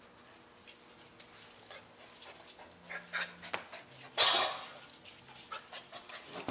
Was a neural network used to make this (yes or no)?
no